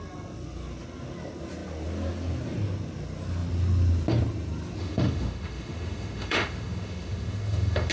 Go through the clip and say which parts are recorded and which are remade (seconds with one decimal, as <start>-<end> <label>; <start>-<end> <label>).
0.0-4.8 recorded; 4.8-7.9 remade